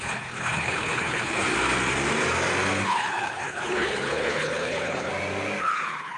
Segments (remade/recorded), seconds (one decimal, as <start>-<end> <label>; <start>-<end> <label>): 0.0-1.5 remade; 1.5-2.9 recorded; 2.9-5.1 remade; 5.1-5.6 recorded; 5.6-6.2 remade